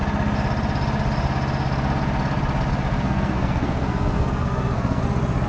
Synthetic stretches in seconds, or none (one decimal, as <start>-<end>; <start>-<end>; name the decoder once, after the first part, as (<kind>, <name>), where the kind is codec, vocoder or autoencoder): 2.9-5.0 (codec, SNAC)